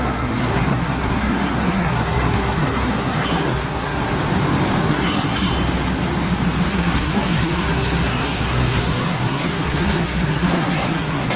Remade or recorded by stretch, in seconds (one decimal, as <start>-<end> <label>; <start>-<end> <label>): 0.0-4.1 remade; 4.1-4.8 recorded; 4.8-5.5 remade; 5.5-6.7 recorded; 6.7-11.4 remade